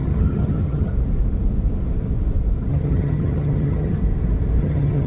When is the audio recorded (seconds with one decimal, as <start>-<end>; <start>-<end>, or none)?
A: 0.9-2.7; 4.0-4.6